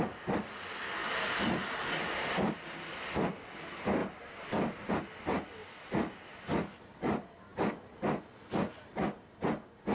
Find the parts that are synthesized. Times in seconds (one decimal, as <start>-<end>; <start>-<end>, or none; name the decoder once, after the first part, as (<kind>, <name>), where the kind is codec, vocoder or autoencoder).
1.0-2.5 (vocoder, BigVGAN v2); 4.0-4.9